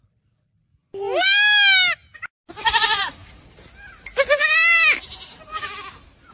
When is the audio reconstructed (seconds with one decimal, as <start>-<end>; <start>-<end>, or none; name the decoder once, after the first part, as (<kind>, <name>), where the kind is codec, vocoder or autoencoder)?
0.0-0.7 (vocoder, BigVGAN v2); 2.5-3.2